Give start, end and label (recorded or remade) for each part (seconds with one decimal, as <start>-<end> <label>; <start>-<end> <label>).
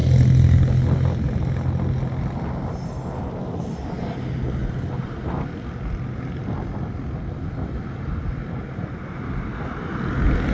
0.0-4.6 recorded; 4.6-5.4 remade; 5.4-10.5 recorded